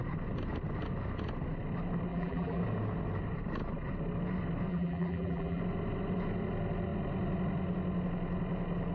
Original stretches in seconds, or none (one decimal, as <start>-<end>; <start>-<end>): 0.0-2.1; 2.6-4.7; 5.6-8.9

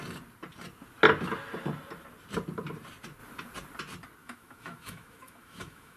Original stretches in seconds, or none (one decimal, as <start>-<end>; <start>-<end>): 0.0-4.2

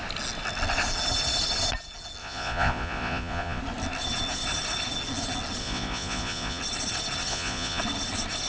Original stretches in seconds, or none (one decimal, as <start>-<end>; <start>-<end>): 0.0-2.2; 3.6-5.6; 6.6-7.3; 7.8-8.5

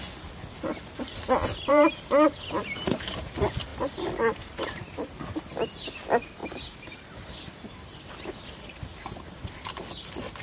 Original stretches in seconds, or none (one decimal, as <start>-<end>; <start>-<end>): 0.0-1.7; 3.3-3.7; 5.5-6.4; 7.5-10.4

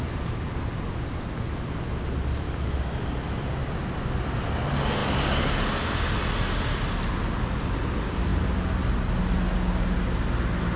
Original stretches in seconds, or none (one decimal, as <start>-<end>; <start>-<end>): 0.0-10.8